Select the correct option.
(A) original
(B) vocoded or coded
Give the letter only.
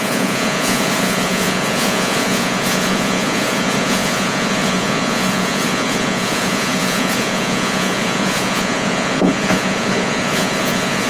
B